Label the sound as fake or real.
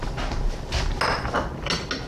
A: real